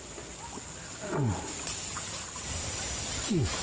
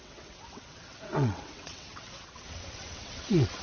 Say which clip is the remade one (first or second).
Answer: second